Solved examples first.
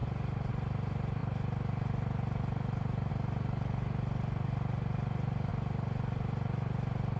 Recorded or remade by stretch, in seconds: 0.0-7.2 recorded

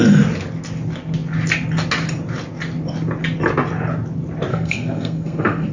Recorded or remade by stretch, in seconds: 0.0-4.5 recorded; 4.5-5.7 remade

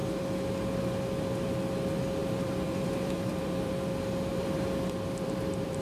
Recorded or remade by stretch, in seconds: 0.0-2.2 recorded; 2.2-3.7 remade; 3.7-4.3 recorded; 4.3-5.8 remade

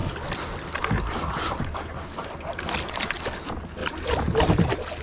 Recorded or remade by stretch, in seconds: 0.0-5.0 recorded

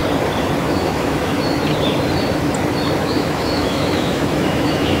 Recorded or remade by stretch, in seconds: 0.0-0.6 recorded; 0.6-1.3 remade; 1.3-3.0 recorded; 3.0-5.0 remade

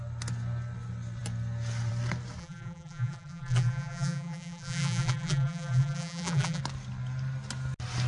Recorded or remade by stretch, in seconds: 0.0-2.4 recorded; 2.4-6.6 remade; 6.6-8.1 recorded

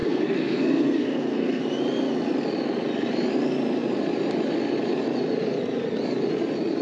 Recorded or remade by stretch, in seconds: 0.0-1.6 remade; 1.6-6.8 recorded